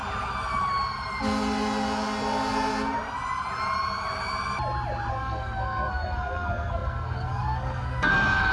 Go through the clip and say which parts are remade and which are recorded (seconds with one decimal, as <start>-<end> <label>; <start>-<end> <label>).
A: 0.0-5.1 recorded; 5.1-8.5 remade